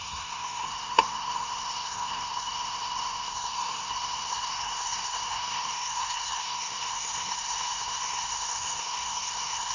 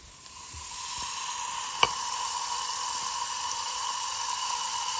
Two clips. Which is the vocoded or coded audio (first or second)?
first